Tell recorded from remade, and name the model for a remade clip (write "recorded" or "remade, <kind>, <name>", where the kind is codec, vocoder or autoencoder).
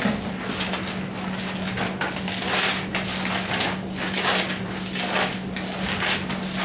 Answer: recorded